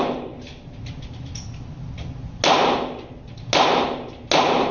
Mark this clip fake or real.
real